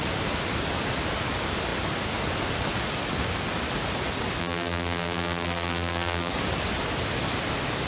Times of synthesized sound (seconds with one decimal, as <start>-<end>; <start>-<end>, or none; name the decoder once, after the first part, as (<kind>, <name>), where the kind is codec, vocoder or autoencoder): 4.4-6.3 (vocoder, BigVGAN v2)